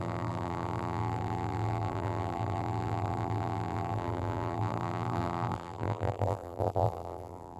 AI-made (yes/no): yes